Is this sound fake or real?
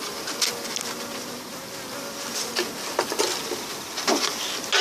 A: real